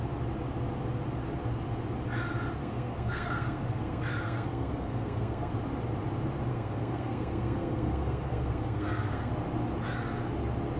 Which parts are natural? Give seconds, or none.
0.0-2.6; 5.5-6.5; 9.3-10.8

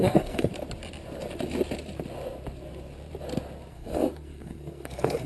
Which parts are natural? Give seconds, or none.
0.5-3.7

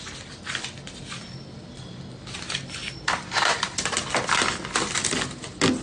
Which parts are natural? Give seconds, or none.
0.0-5.8

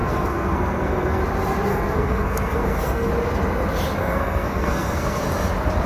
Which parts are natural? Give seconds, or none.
1.2-1.7; 3.1-4.0; 5.2-5.9

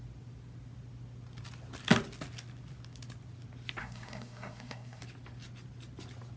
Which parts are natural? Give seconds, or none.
0.0-3.8; 5.0-6.4

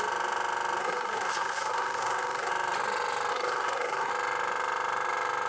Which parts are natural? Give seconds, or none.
0.0-0.8; 2.5-3.3; 4.1-5.5

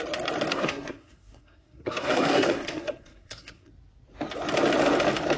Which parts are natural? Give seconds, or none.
0.0-0.5; 3.7-5.4

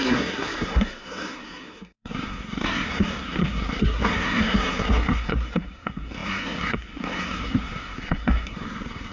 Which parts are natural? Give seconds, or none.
none